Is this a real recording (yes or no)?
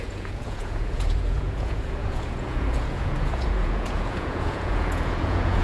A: no